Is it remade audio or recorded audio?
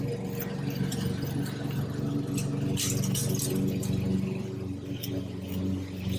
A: recorded